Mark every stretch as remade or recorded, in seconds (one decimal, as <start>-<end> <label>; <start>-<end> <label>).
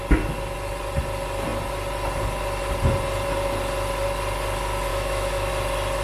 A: 0.0-4.9 recorded; 4.9-5.5 remade; 5.5-6.0 recorded